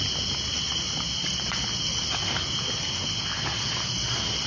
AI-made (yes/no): no